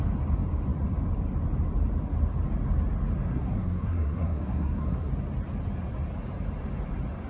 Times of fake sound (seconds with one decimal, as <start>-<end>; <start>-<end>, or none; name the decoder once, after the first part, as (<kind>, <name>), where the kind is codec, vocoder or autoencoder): 3.3-5.1 (codec, SNAC)